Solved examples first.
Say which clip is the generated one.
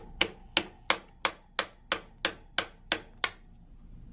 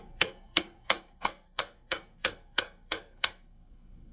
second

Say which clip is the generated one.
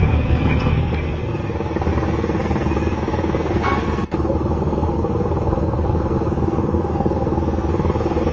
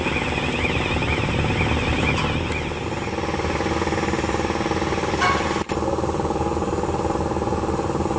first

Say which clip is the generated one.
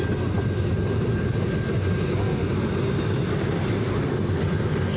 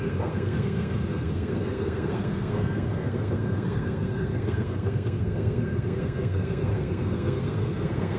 second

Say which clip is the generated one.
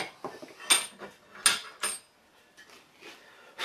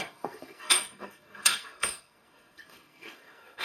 second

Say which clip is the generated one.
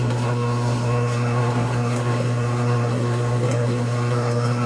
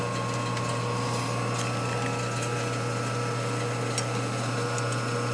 first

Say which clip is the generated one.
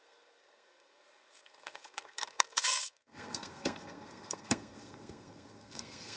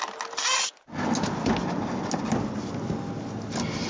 first